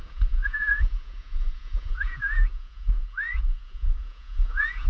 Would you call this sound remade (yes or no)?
yes